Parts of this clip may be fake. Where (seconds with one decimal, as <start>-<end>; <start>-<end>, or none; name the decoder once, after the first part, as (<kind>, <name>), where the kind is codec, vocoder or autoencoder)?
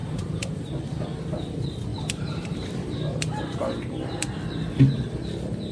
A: 0.0-0.8 (vocoder, BigVGAN v2); 1.9-3.4